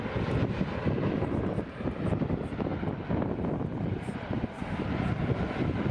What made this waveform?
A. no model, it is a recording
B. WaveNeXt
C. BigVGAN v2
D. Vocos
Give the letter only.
A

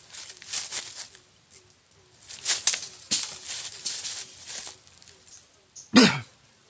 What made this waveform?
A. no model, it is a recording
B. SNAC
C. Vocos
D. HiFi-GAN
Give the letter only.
A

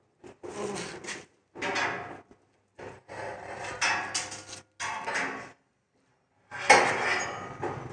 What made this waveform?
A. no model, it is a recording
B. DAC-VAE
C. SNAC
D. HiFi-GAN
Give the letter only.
A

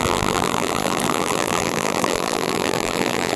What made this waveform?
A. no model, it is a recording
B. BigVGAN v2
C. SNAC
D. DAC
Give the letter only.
B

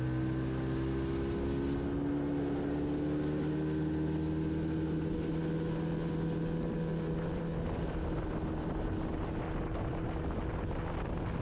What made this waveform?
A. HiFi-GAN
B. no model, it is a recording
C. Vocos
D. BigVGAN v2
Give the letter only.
B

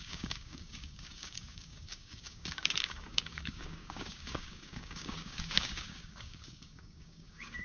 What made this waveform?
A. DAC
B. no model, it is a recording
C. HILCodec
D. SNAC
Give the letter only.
A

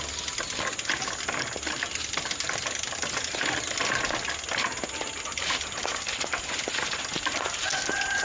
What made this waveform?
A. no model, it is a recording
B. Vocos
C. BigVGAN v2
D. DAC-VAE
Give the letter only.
A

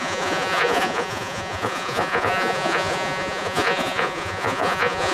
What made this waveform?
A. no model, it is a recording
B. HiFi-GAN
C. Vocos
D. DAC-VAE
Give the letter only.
C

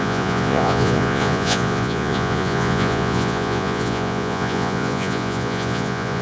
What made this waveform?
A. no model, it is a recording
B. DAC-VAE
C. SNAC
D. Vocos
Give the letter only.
D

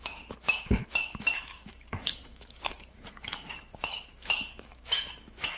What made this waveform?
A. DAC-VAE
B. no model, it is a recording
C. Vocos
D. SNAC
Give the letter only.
A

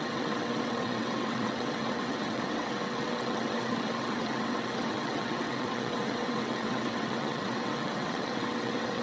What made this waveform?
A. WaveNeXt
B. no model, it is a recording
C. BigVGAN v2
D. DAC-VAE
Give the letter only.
A